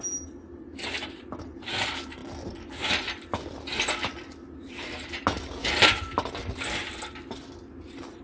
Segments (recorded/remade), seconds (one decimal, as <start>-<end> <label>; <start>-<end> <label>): 0.0-8.2 recorded